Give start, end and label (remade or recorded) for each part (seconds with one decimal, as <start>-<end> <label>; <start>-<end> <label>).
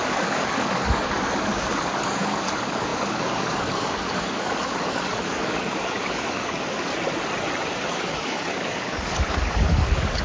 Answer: 0.0-6.9 remade; 6.9-7.9 recorded; 7.9-10.2 remade